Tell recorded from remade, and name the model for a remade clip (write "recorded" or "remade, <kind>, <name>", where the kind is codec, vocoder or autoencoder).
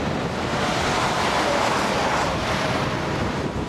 recorded